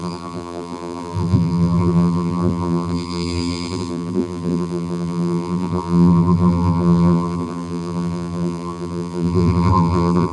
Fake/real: fake